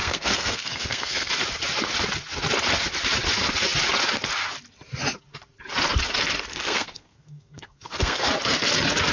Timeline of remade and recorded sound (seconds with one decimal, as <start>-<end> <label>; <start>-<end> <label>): 0.0-1.3 remade; 1.3-6.5 recorded; 6.5-8.3 remade; 8.3-9.1 recorded